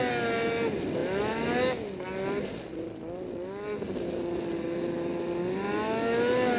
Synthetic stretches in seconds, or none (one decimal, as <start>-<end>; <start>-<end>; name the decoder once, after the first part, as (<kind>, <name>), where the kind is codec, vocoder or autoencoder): none